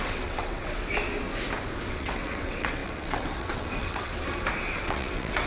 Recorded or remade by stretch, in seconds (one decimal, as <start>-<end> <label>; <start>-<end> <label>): 0.0-0.9 remade; 0.9-1.9 recorded; 1.9-4.1 remade; 4.1-4.6 recorded; 4.6-5.5 remade